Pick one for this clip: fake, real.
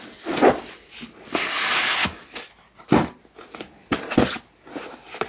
real